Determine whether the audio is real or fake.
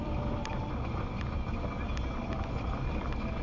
real